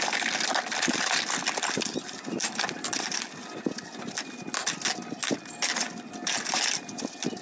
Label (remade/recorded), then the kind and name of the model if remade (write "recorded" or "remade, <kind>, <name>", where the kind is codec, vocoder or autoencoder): recorded